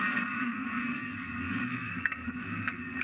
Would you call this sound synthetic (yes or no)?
yes